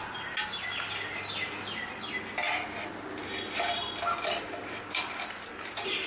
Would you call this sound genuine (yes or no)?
yes